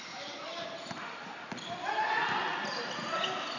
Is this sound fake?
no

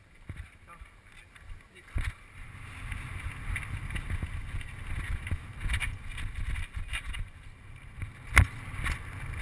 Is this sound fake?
no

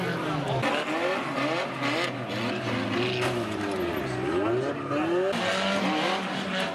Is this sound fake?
no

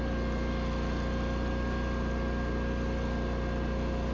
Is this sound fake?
no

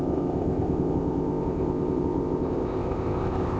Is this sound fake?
yes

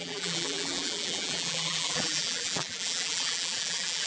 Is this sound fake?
yes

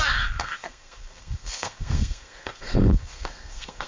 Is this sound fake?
yes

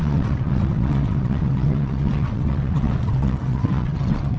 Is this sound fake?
yes